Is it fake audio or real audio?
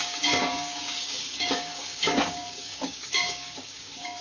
fake